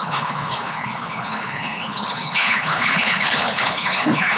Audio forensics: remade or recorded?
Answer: remade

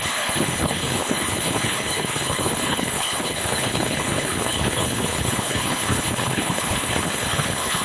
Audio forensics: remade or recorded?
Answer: remade